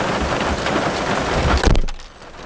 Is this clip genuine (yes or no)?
yes